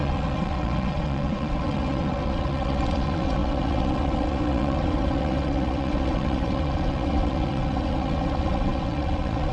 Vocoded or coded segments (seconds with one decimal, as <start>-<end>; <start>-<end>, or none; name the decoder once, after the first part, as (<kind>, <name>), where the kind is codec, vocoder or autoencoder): 0.0-9.5 (vocoder, WaveNeXt)